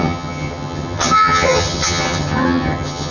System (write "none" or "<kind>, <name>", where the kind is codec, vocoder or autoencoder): vocoder, HiFi-GAN